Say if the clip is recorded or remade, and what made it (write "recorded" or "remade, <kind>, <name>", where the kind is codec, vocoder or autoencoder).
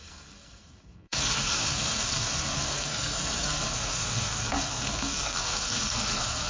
remade, codec, SNAC